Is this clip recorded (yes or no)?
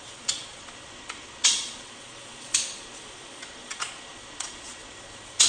no